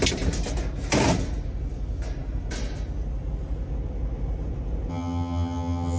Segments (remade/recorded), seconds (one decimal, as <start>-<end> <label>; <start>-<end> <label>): 0.0-4.9 recorded; 4.9-6.0 remade